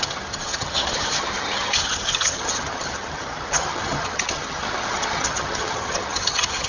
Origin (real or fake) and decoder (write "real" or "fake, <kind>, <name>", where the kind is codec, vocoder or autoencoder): fake, vocoder, HiFi-GAN